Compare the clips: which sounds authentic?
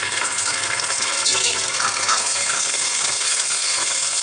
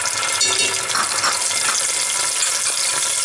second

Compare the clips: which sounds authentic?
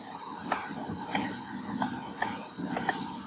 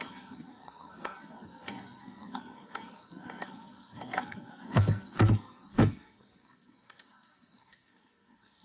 first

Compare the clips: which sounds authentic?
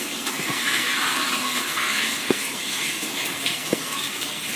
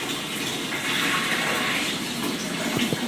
second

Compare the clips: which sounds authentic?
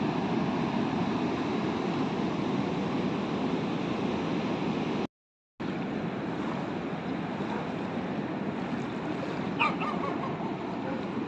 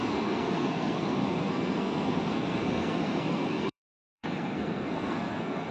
first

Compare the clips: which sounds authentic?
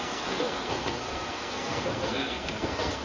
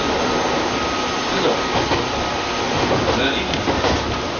second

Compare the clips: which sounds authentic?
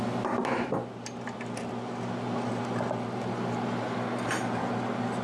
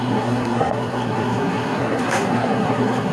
first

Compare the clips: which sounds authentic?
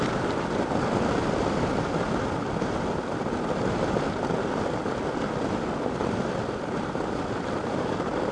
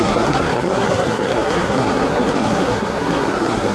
first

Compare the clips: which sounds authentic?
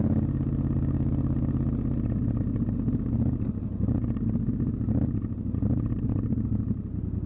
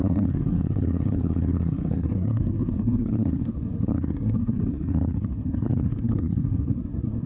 first